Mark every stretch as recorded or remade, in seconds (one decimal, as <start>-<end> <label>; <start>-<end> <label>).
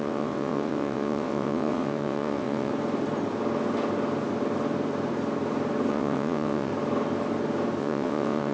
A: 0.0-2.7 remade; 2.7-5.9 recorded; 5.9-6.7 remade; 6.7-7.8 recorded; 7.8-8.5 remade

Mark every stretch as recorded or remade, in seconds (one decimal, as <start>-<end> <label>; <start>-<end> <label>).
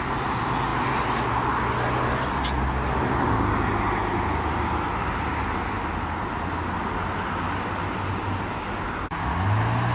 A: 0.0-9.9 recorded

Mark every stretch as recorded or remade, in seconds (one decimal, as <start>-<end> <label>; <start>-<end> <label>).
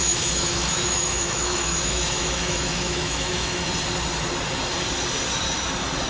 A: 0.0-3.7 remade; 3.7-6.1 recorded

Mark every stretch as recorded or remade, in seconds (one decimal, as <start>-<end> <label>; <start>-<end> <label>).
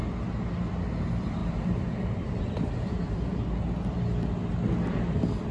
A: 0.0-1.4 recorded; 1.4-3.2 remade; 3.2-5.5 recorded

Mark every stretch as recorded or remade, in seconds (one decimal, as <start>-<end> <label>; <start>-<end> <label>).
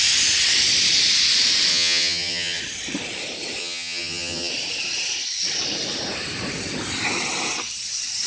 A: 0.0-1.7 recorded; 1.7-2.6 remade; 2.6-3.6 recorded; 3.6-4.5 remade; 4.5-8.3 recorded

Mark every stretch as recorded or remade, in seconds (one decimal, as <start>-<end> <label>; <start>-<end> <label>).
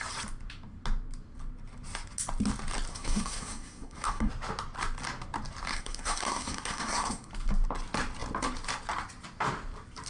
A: 0.0-2.9 recorded; 2.9-4.3 remade; 4.3-5.7 recorded; 5.7-7.3 remade; 7.3-10.1 recorded